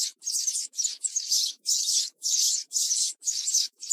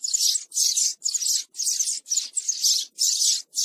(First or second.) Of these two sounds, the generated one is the first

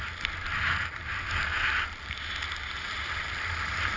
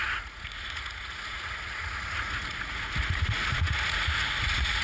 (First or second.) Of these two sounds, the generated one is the second